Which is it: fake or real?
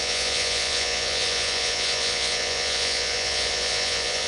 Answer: fake